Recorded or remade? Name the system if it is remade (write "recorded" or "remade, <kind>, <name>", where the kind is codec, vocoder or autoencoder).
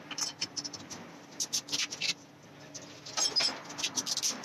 recorded